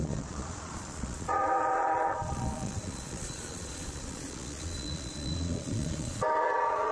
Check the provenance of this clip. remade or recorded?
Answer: remade